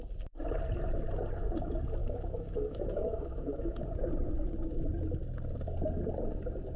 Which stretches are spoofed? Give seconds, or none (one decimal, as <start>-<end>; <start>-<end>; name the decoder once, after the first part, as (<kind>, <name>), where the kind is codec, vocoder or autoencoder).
2.0-3.8 (autoencoder, DAC-VAE)